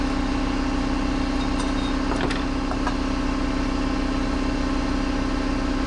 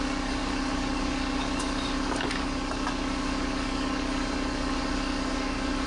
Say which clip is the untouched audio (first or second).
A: first